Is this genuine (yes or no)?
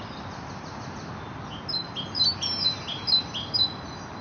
yes